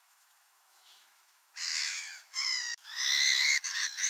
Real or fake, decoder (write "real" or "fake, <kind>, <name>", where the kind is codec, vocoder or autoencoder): fake, autoencoder, DAC-VAE